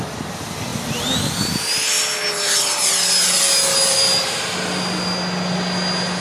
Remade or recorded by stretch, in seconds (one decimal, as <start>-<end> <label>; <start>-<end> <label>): 0.0-6.2 recorded